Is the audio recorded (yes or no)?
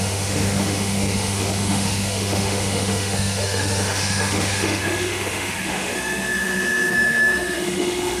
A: no